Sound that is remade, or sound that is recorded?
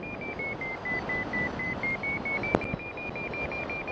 recorded